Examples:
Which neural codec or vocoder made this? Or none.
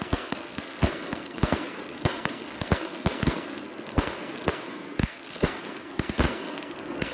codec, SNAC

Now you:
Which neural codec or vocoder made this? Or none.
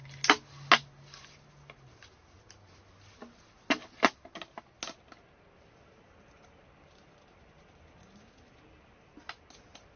none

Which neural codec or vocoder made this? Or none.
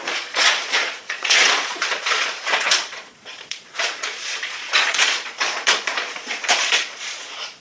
vocoder, Vocos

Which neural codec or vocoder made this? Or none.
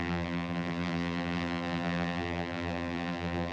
vocoder, BigVGAN v2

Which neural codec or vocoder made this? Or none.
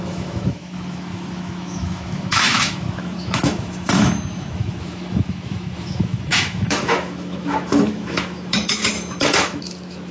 autoencoder, DAC-VAE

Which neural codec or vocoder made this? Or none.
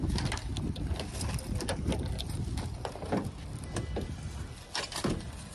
none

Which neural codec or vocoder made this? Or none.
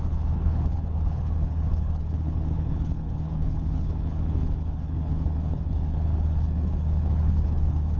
codec, HILCodec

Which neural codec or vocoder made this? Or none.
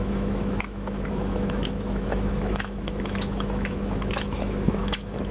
autoencoder, DAC-VAE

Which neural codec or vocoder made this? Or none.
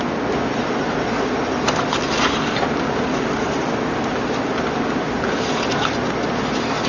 none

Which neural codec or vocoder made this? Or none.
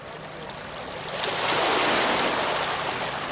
none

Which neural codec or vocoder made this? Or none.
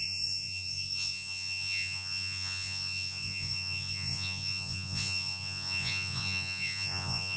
vocoder, Vocos